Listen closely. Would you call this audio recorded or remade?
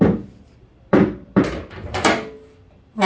remade